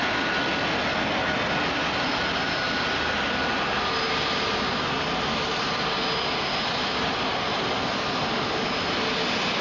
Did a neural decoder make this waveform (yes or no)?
no